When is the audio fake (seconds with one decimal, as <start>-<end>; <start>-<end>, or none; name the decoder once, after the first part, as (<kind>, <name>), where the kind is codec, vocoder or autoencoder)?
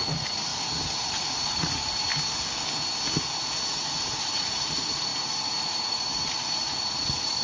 0.0-0.5 (vocoder, Vocos); 1.1-2.1; 4.1-7.4